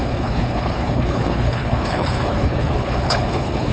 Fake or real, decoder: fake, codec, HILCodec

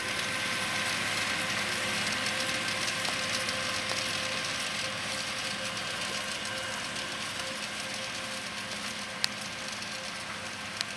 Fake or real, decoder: real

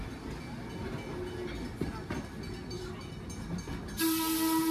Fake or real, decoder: real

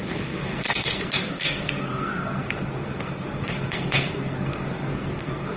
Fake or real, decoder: fake, codec, SNAC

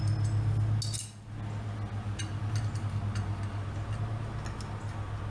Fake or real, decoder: real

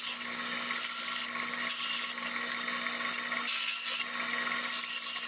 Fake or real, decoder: real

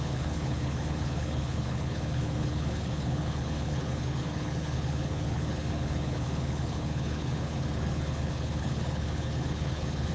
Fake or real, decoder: fake, codec, HILCodec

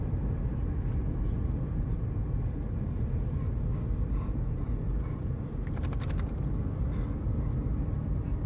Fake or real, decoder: real